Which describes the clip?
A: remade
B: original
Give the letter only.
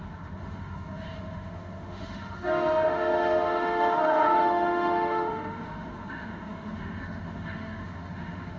A